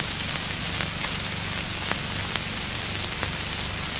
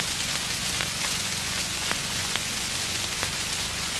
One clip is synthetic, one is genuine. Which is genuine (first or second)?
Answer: first